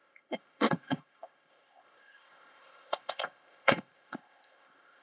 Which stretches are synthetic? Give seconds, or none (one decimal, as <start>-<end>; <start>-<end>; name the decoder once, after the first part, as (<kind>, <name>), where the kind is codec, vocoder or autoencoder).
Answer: 0.0-5.0 (codec, ZipCodec)